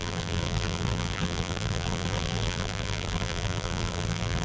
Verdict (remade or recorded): remade